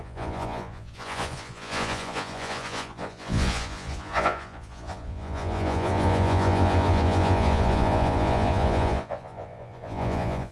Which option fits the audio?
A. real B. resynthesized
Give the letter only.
B